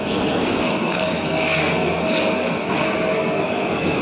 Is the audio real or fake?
fake